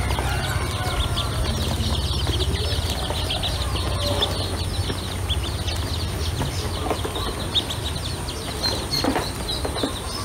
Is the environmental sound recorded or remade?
recorded